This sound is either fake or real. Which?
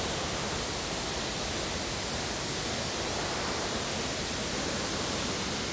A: real